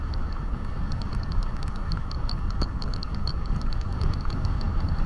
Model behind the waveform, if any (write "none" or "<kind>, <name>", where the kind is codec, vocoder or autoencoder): codec, DAC